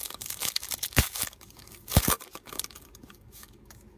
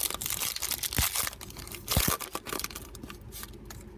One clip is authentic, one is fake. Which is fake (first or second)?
first